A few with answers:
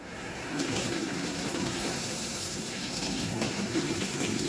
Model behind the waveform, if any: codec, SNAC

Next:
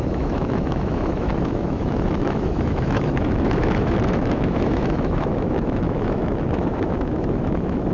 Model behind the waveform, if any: autoencoder, DAC-VAE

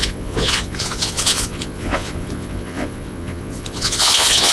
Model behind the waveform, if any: vocoder, Vocos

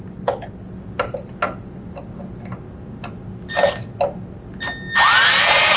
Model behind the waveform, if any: none